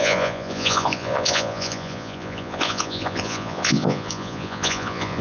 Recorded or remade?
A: remade